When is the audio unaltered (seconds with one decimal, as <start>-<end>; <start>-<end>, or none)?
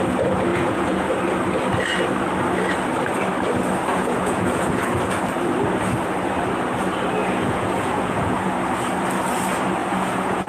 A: 0.0-0.5; 1.1-3.9; 5.0-7.2; 8.5-9.8